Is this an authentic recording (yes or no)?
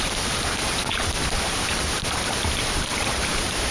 yes